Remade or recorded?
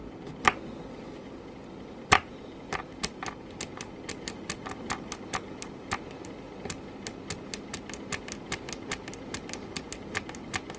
recorded